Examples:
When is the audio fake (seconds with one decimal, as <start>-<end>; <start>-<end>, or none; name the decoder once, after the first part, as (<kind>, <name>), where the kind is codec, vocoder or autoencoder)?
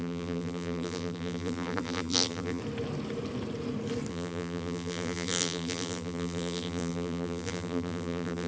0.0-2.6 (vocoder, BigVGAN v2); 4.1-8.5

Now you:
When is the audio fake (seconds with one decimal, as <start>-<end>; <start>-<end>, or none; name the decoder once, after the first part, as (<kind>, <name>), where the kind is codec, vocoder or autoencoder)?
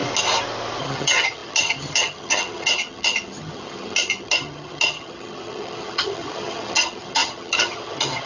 0.8-8.3 (vocoder, HiFi-GAN)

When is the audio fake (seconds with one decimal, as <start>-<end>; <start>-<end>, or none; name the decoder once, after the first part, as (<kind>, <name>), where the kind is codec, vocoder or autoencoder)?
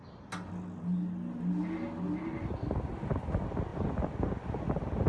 none